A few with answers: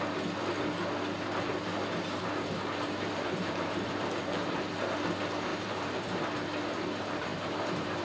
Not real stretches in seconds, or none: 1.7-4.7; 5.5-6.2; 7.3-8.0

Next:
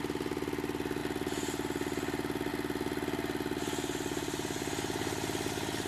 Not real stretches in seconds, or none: none

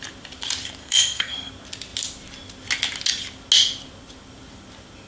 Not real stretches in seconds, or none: 0.8-1.5

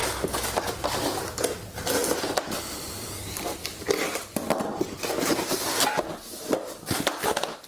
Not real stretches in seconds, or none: none

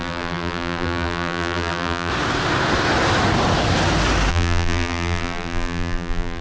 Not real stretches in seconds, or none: 0.0-2.1; 4.3-6.4

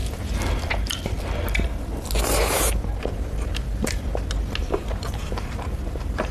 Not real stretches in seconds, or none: 3.0-4.1; 4.6-6.3

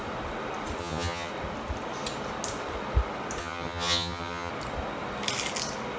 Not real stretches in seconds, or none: 0.8-1.3; 3.4-4.5

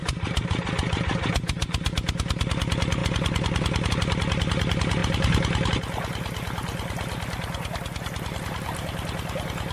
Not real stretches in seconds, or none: none